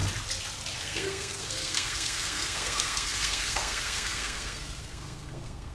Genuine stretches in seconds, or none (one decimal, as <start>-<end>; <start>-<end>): 0.0-0.8